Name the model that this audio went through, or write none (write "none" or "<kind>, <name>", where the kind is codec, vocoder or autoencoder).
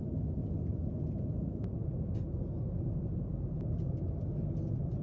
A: none